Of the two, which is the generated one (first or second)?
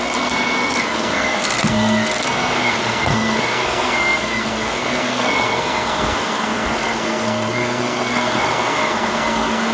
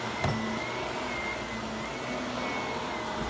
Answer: first